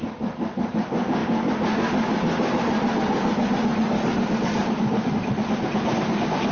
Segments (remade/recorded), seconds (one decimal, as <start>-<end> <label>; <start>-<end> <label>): 0.0-6.5 recorded